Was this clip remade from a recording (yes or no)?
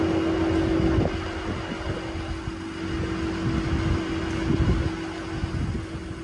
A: no